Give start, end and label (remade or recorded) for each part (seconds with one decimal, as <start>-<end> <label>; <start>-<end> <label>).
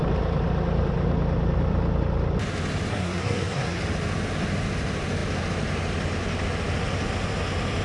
0.0-2.9 recorded; 2.9-3.8 remade; 3.8-7.8 recorded